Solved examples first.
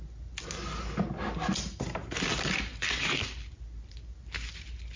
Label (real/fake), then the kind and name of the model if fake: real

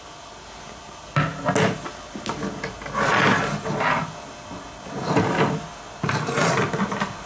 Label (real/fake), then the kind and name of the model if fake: real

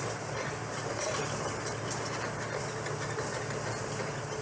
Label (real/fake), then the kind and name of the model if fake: real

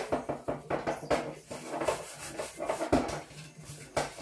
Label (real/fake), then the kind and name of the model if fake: real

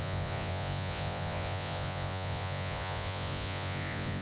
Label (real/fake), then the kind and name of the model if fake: fake, vocoder, Vocos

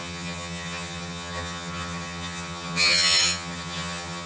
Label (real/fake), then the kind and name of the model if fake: fake, vocoder, HiFi-GAN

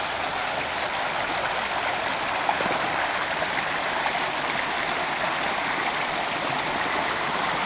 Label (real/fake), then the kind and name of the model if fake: real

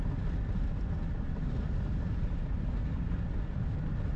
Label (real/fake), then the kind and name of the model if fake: real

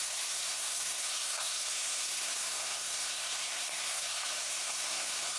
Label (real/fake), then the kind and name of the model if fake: fake, codec, SNAC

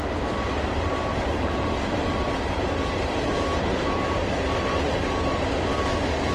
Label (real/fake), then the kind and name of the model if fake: real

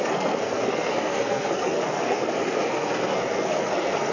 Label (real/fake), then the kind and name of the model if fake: fake, codec, SNAC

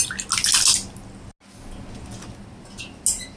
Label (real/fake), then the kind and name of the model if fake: real